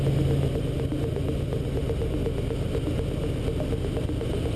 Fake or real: real